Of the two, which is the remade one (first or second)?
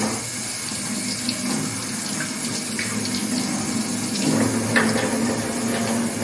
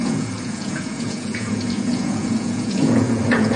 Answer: second